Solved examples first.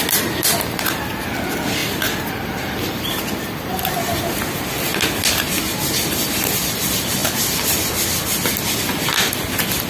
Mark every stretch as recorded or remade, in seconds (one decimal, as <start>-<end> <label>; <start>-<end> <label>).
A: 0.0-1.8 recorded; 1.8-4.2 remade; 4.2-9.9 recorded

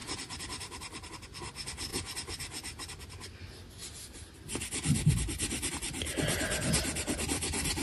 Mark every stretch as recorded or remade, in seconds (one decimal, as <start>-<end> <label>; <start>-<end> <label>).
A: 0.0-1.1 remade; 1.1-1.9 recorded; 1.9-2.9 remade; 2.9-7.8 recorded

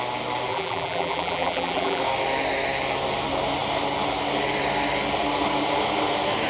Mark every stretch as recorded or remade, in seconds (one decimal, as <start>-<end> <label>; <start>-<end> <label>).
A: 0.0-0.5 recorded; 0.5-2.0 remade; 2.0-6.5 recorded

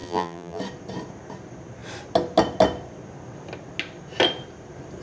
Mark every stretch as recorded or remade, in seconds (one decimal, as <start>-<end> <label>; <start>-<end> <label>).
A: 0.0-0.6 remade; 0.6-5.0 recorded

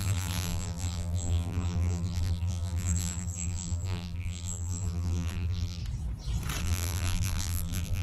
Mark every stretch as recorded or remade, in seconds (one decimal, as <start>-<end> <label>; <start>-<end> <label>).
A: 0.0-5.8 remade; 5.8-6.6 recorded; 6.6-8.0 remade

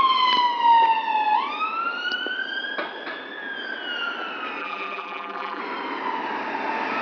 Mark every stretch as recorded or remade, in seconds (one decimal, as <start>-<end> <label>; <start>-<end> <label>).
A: 0.0-4.6 recorded; 4.6-5.6 remade; 5.6-7.0 recorded

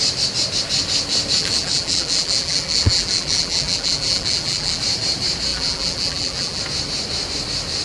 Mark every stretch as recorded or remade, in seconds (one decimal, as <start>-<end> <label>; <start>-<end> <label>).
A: 0.0-1.4 recorded; 1.4-4.8 remade; 4.8-5.5 recorded; 5.5-6.6 remade; 6.6-7.8 recorded